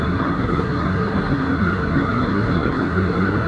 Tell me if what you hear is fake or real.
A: fake